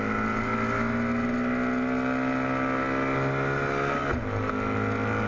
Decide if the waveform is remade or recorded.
recorded